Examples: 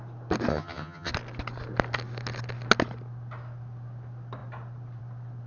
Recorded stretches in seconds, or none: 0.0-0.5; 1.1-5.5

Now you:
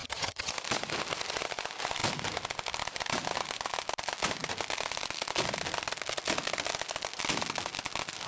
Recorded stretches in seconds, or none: 0.5-8.3

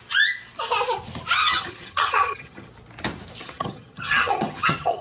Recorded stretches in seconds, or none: 0.0-1.4; 2.7-3.4

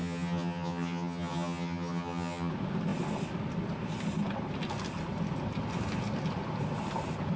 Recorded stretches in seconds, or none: 2.5-7.4

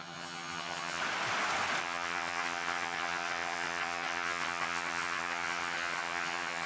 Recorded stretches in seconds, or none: 1.0-1.8

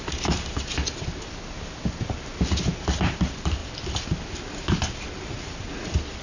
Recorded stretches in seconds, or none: 0.0-6.2

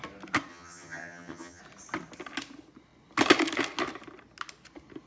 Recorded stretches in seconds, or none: 0.0-0.5; 1.6-5.1

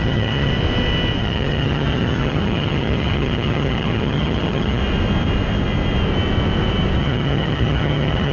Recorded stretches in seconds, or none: 0.5-1.2; 4.8-7.0